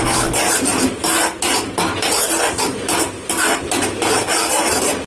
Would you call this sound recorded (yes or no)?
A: yes